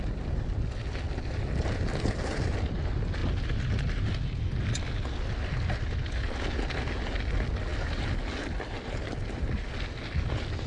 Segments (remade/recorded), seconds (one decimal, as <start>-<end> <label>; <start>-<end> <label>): 0.0-10.7 recorded